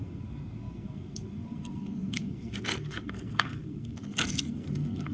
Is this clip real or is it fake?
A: fake